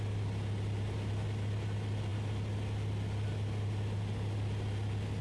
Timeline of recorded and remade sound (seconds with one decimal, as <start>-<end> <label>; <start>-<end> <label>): 0.0-5.2 recorded